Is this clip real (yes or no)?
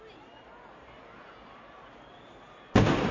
yes